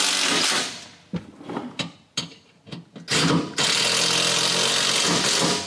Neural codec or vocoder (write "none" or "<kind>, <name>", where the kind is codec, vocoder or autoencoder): none